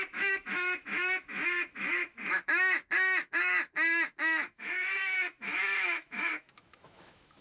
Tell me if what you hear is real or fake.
fake